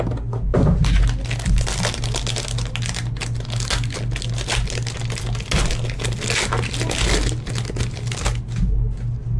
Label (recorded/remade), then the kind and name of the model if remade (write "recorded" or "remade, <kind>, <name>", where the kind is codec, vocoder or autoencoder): recorded